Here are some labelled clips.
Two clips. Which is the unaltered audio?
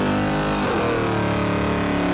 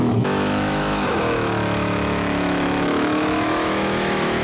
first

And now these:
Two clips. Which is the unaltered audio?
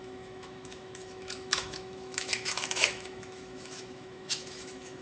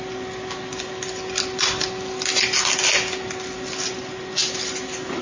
second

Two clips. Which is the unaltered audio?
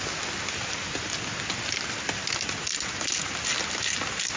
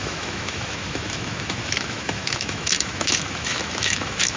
first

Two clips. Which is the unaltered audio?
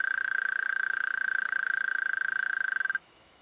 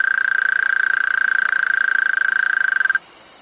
second